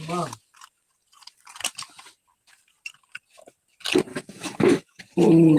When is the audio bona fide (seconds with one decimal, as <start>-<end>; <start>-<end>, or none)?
0.0-4.1; 5.0-5.6